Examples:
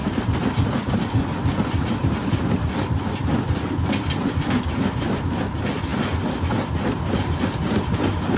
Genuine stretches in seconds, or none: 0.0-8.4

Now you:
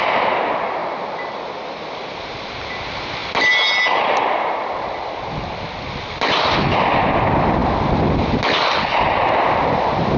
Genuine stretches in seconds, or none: 0.0-10.2

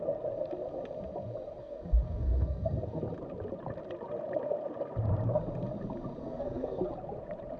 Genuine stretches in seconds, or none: 0.0-1.6; 3.0-6.2; 6.8-7.6

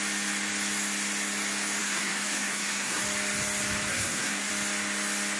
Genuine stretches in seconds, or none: 0.0-1.8; 3.0-3.9; 4.5-5.4

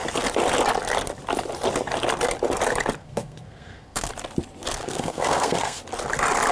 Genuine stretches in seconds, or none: 0.0-3.0; 4.1-4.8; 5.8-6.5

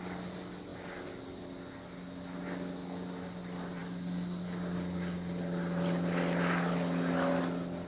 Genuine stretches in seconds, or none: 0.0-7.9

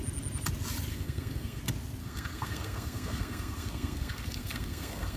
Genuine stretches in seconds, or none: 0.0-0.9; 1.6-2.0

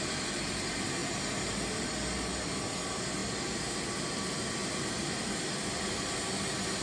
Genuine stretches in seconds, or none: 0.0-6.8